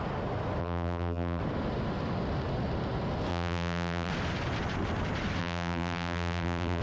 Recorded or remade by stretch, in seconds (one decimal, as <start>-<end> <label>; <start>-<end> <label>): 0.0-0.6 recorded; 0.6-1.4 remade; 1.4-3.3 recorded; 3.3-4.1 remade; 4.1-5.4 recorded; 5.4-6.8 remade